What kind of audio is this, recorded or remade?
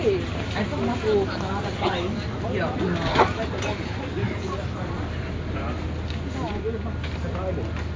recorded